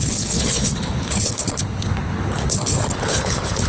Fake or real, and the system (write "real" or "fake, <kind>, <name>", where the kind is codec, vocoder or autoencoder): fake, codec, HILCodec